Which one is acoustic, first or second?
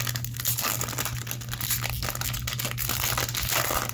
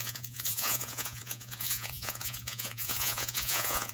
first